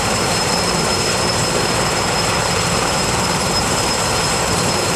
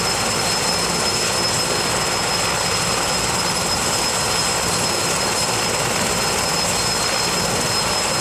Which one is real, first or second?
second